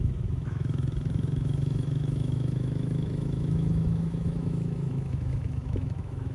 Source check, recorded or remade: remade